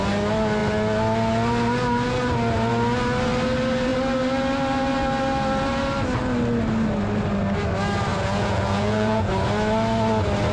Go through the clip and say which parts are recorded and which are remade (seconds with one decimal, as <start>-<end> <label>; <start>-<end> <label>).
0.0-8.1 recorded; 8.1-9.3 remade; 9.3-10.5 recorded

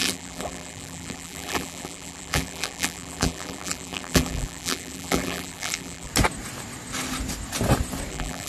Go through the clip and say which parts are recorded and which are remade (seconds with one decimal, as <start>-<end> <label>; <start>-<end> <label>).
0.0-6.1 remade; 6.1-8.1 recorded; 8.1-8.5 remade

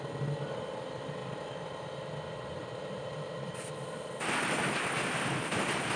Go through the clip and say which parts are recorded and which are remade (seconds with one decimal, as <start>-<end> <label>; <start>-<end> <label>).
0.0-6.0 recorded

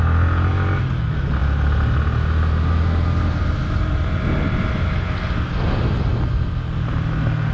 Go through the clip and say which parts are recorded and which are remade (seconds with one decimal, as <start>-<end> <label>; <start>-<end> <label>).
0.0-7.5 recorded